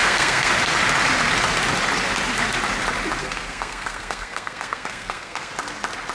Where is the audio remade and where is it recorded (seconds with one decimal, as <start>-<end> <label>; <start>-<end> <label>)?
0.0-0.5 remade; 0.5-3.2 recorded; 3.2-5.5 remade; 5.5-6.1 recorded